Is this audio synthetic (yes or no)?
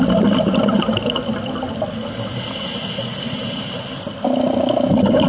no